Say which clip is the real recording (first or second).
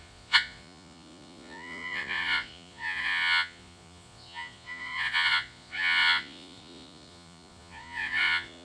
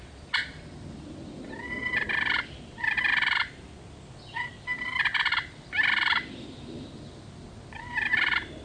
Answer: second